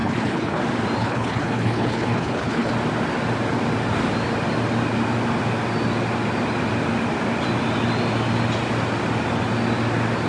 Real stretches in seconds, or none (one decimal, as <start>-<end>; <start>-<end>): 0.6-1.0; 2.7-10.3